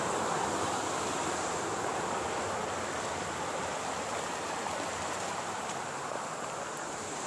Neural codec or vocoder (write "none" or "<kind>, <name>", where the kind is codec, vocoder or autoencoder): none